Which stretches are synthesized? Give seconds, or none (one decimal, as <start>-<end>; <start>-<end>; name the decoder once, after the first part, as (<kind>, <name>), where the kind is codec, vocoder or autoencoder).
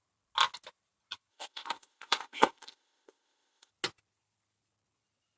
1.3-3.7 (codec, ZipCodec)